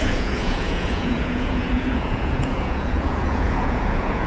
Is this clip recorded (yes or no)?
no